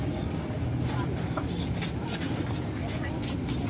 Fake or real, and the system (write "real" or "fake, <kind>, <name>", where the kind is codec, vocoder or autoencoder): real